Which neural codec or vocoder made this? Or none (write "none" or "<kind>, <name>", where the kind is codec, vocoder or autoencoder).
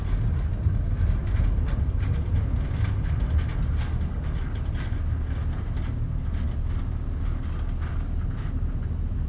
none